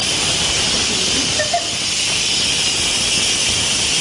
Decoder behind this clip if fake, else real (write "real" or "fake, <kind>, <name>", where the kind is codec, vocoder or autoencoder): real